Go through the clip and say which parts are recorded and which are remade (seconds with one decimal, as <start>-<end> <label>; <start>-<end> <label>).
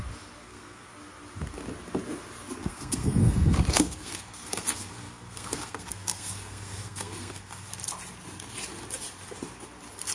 0.0-0.4 recorded; 0.4-0.9 remade; 0.9-2.6 recorded; 2.6-7.7 remade; 7.7-10.1 recorded